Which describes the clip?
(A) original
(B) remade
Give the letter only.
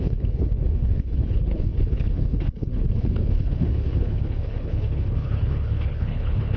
B